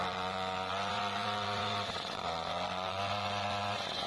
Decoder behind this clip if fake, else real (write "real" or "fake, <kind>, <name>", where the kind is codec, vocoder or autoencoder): fake, vocoder, Vocos